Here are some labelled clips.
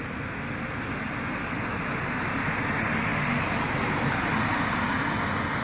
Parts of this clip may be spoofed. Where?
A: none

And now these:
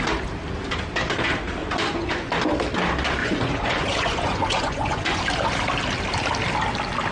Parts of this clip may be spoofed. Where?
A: 1.6-2.3 (vocoder, Vocos); 3.2-5.2

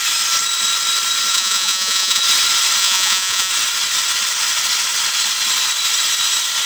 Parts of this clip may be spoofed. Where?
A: 1.3-2.2 (vocoder, Vocos); 2.8-3.5